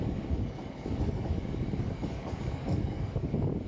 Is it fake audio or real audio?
fake